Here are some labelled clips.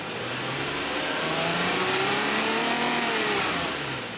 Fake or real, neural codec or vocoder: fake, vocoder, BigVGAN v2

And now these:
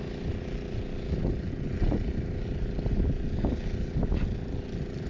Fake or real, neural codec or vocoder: real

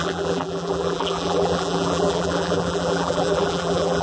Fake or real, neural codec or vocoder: fake, vocoder, BigVGAN v2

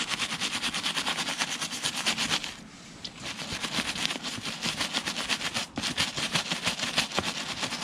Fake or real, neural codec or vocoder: real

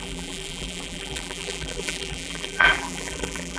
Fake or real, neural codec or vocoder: fake, vocoder, BigVGAN v2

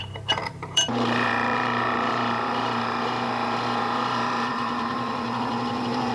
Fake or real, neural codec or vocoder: fake, vocoder, BigVGAN v2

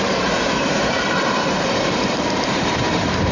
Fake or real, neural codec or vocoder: fake, vocoder, BigVGAN v2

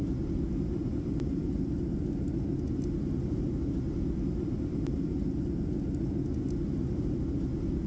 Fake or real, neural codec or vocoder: real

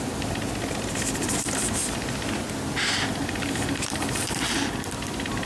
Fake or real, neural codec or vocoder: real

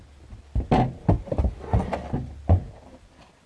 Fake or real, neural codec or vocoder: real